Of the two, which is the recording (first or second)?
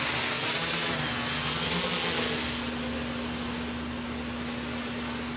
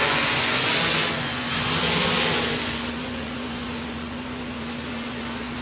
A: first